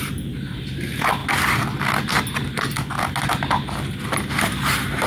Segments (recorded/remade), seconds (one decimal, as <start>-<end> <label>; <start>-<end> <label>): 0.0-1.2 remade; 1.2-4.3 recorded; 4.3-5.1 remade